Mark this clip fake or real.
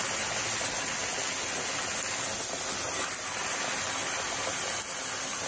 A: real